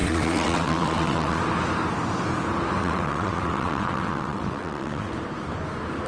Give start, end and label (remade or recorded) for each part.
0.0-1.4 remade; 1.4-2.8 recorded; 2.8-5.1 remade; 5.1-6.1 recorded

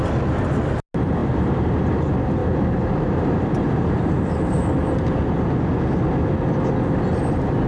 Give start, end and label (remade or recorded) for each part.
0.0-1.2 recorded; 1.2-1.9 remade; 1.9-2.4 recorded; 2.4-4.6 remade; 4.6-7.7 recorded

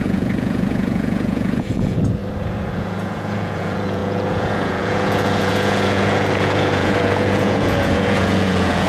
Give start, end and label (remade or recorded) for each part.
0.0-2.2 remade; 2.2-2.7 recorded; 2.7-8.9 remade

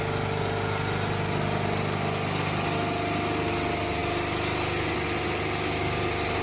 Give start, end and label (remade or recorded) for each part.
0.0-6.4 recorded

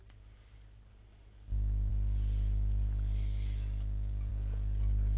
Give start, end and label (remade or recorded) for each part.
0.0-5.2 recorded

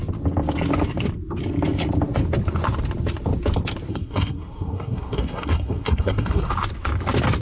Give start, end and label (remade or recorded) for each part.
0.0-3.9 recorded; 3.9-6.5 remade; 6.5-7.4 recorded